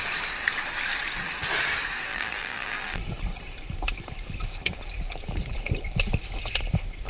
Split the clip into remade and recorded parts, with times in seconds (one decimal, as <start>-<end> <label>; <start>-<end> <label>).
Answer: 0.0-2.1 recorded; 2.1-3.0 remade; 3.0-7.1 recorded